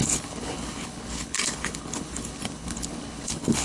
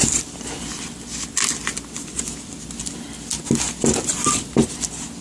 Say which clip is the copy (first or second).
first